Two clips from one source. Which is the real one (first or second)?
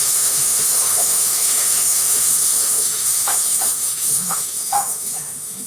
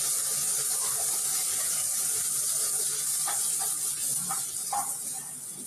second